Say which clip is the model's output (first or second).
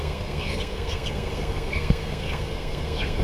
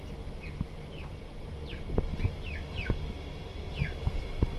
first